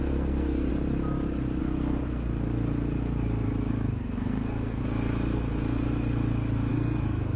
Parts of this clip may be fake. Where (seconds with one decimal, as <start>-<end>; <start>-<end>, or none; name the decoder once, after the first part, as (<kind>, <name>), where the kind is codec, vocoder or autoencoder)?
0.0-0.7 (codec, SNAC); 1.6-2.3; 3.7-4.8; 6.7-7.4